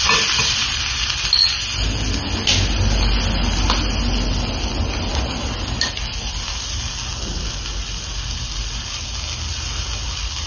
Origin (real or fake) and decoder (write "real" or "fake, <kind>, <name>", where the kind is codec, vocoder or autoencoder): real